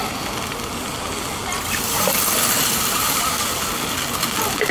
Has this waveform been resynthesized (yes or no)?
no